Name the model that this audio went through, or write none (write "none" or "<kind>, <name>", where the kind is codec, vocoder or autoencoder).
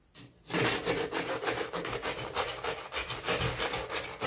none